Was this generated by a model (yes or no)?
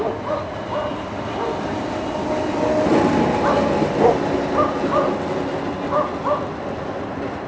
no